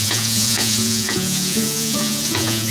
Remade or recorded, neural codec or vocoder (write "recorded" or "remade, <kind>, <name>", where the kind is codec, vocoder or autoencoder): remade, vocoder, Vocos